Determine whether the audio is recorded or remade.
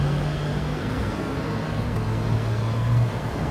remade